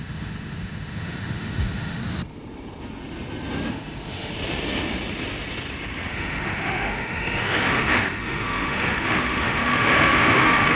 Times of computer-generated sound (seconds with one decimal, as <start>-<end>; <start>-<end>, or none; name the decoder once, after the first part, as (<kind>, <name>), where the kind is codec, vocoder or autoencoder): 0.0-2.0 (autoencoder, DAC-VAE); 3.7-4.3; 6.1-10.8